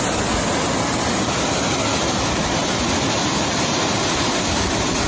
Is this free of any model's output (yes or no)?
yes